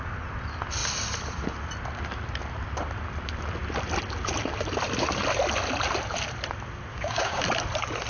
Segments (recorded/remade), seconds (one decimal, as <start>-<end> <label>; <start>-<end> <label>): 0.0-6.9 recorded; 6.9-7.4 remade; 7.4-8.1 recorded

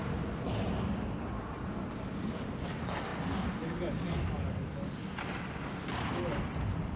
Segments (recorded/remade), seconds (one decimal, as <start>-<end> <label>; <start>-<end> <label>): 0.0-7.0 recorded

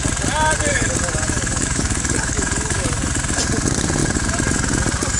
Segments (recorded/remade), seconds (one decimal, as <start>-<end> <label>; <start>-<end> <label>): 0.0-0.7 recorded; 0.7-3.1 remade; 3.1-5.2 recorded